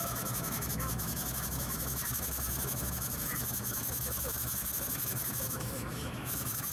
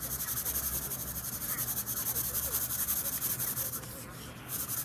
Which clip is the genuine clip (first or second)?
second